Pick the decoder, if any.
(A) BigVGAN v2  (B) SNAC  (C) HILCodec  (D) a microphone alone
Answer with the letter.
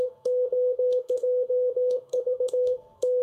B